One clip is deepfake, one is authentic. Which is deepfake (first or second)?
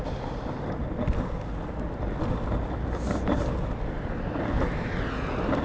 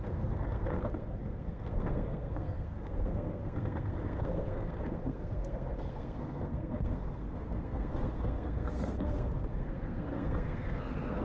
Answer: second